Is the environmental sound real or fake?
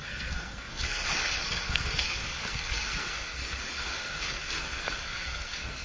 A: fake